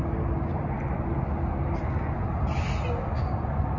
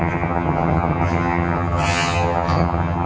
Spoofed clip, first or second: second